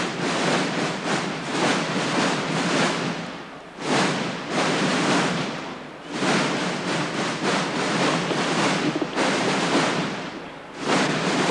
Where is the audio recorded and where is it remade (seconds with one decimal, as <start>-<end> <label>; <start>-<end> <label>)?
0.0-11.5 recorded